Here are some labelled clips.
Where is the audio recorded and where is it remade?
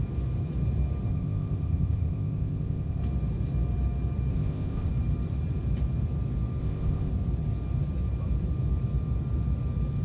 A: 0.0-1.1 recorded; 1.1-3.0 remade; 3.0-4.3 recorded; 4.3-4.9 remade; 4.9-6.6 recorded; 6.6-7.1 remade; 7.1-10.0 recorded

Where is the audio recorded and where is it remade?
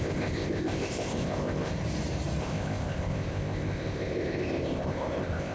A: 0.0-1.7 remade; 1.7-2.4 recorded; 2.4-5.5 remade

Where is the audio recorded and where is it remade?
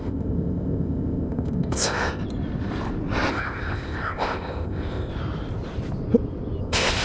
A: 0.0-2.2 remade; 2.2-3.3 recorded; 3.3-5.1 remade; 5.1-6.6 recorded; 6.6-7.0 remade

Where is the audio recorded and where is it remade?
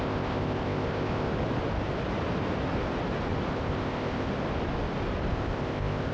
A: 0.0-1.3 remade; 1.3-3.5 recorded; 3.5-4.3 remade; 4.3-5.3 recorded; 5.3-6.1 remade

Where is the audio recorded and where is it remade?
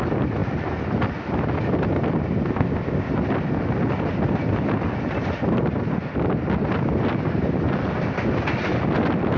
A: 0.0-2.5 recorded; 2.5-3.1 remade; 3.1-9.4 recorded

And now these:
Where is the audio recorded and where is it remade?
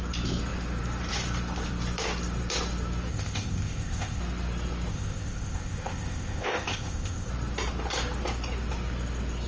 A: 0.0-3.1 recorded; 3.1-4.2 remade; 4.2-4.9 recorded; 4.9-7.3 remade; 7.3-9.5 recorded